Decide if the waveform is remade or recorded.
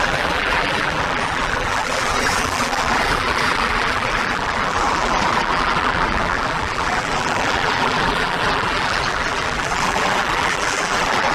remade